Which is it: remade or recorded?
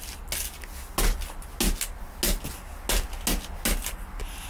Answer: recorded